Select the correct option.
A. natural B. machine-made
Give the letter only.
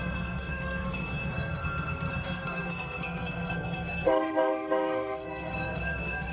B